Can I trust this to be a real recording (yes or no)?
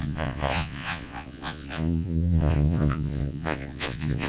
no